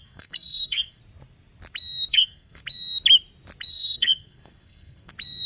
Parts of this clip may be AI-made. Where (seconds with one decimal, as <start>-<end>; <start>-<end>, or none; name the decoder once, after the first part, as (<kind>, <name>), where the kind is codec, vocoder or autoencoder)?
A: 0.0-1.0 (codec, SNAC); 2.1-2.6; 3.7-5.1